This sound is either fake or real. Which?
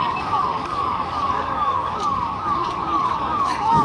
fake